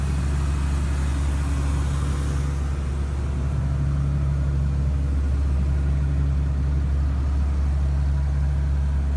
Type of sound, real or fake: real